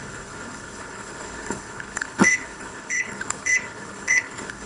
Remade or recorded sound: remade